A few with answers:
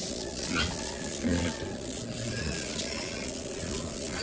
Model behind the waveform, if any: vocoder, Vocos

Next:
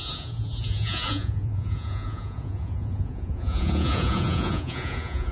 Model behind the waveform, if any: vocoder, Vocos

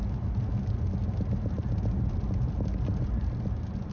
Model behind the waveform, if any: none